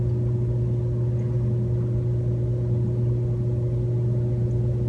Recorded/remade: recorded